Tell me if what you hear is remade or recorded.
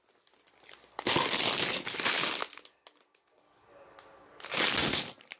recorded